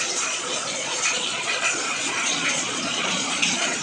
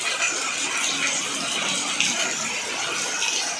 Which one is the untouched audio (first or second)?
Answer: second